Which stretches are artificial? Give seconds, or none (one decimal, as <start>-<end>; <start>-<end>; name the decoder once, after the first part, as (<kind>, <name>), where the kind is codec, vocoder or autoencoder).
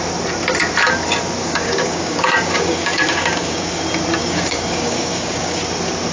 1.4-3.8 (codec, DAC); 4.2-5.6